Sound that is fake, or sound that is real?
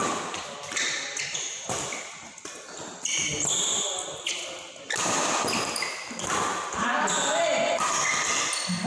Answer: real